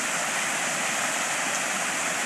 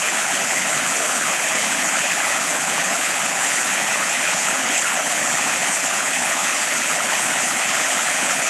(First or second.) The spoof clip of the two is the second